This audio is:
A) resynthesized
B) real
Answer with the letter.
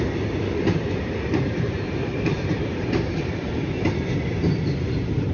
A